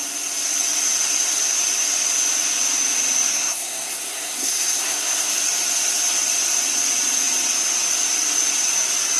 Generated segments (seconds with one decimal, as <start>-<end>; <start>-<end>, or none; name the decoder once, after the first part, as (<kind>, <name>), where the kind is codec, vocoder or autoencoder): 3.3-5.3 (codec, SNAC)